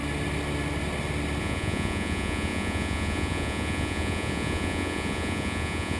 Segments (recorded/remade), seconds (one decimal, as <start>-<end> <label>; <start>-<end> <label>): 0.0-1.4 recorded; 1.4-6.0 remade